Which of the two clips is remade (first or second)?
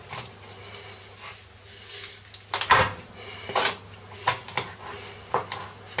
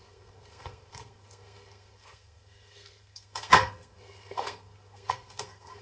second